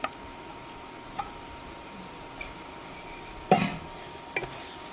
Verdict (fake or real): real